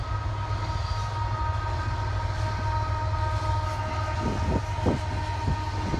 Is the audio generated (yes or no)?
no